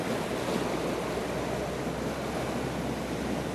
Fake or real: real